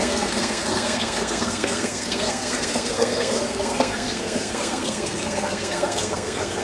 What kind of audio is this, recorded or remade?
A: remade